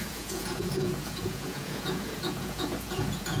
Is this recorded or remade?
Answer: remade